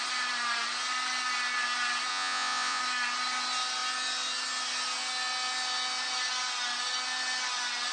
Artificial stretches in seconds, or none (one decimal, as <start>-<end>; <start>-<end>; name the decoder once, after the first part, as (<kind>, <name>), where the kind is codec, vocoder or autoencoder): 2.1-2.8 (vocoder, Vocos)